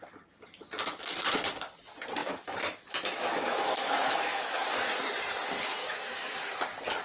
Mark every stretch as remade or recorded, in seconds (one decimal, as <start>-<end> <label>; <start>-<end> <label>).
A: 0.0-2.2 recorded; 2.2-4.7 remade; 4.7-5.8 recorded; 5.8-6.6 remade; 6.6-7.0 recorded